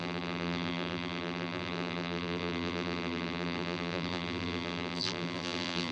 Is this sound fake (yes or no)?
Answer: yes